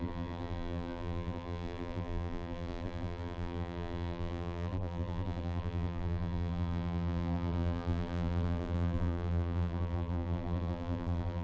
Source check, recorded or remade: remade